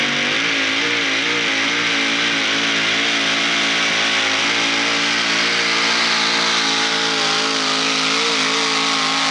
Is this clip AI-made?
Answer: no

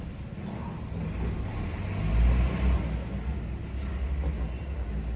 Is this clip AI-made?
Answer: no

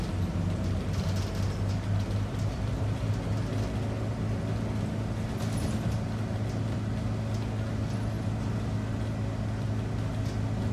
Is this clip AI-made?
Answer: no